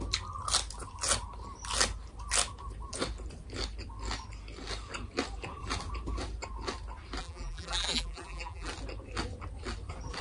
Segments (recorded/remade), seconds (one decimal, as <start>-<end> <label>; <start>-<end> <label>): 0.0-7.2 recorded; 7.2-8.7 remade; 8.7-10.2 recorded